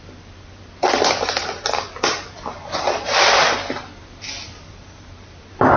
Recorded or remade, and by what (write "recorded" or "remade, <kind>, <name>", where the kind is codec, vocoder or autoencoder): remade, vocoder, BigVGAN v2